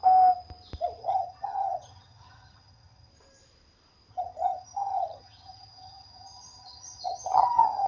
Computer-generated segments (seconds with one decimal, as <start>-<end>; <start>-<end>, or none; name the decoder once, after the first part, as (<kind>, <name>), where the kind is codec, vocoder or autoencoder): 1.0-3.1 (vocoder, HiFi-GAN); 4.1-7.9